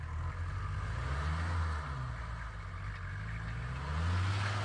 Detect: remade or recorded recorded